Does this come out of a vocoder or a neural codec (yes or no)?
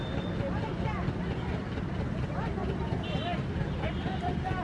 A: no